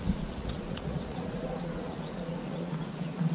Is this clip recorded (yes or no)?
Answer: no